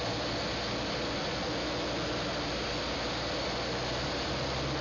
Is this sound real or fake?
real